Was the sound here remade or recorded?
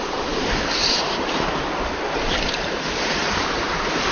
remade